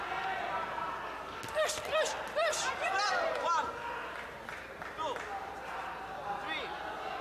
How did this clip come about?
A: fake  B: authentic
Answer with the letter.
B